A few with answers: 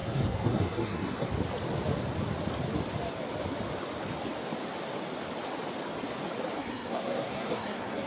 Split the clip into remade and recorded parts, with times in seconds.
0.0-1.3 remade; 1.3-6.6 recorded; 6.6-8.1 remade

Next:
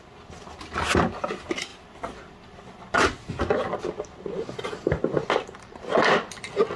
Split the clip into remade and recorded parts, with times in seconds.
0.0-6.8 recorded

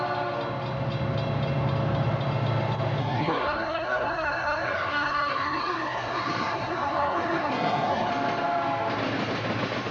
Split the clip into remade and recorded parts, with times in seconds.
0.0-3.0 recorded; 3.0-8.1 remade; 8.1-9.9 recorded

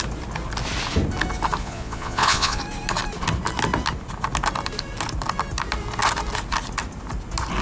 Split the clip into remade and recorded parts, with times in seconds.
0.0-1.6 recorded; 1.6-2.6 remade; 2.6-7.6 recorded

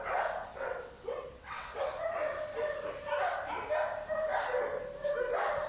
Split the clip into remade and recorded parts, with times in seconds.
0.0-0.5 recorded; 0.5-1.9 remade; 1.9-5.7 recorded